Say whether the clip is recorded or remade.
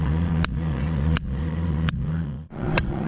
remade